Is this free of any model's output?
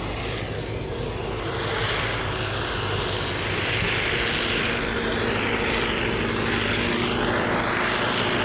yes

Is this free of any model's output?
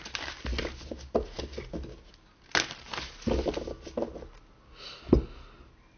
yes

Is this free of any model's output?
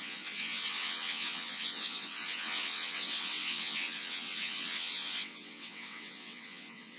no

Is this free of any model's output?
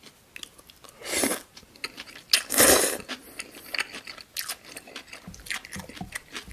yes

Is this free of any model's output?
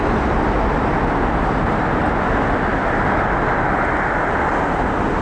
yes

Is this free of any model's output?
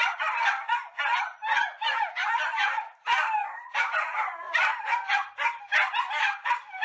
yes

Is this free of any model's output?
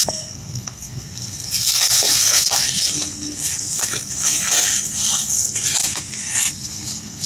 no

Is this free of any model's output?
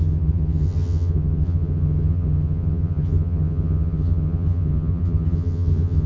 no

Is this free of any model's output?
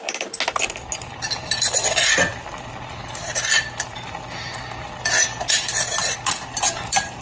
yes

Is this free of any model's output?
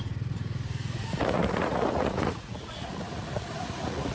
no